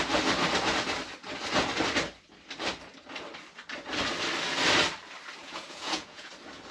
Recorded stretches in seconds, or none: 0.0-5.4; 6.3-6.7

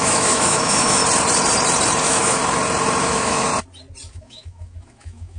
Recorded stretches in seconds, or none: 1.0-2.0; 2.4-3.0; 3.5-4.1